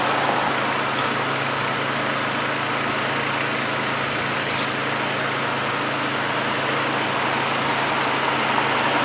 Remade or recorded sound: recorded